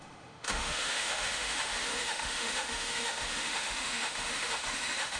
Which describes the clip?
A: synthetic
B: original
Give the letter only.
A